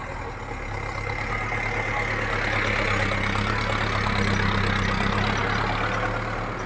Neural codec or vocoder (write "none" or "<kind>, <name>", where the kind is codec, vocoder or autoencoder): none